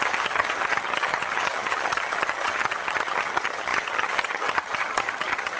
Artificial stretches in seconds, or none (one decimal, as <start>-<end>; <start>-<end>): 0.0-5.6

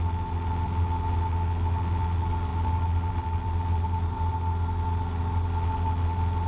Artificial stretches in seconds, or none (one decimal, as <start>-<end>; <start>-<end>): none

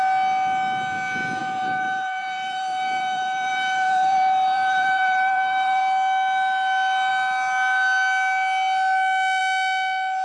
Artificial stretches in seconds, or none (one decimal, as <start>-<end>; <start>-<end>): 1.4-5.8

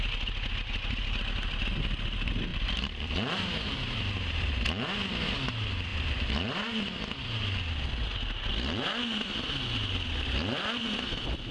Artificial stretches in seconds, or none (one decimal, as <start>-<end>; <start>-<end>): 2.5-4.5; 5.9-6.8

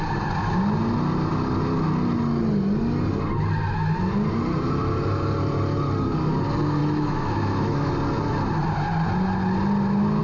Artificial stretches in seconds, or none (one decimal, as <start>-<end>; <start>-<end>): 6.8-7.9

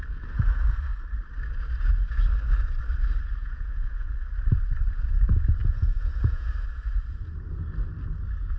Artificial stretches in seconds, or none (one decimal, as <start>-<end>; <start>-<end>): 3.4-4.1; 5.6-6.5

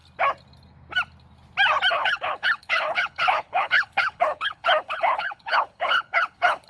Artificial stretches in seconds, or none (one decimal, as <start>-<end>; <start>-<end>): 1.9-6.7